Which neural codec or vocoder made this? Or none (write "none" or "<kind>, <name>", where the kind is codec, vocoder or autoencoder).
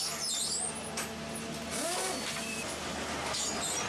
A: none